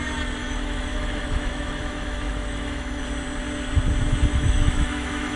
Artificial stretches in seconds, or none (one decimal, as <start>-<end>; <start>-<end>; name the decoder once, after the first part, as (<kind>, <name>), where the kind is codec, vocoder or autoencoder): 0.4-3.0 (autoencoder, DAC-VAE); 4.3-5.4